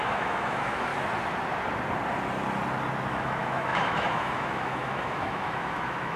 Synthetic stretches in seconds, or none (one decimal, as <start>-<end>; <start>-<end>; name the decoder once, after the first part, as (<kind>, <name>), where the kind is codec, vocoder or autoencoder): 0.0-0.9 (autoencoder, DAC-VAE); 3.1-6.2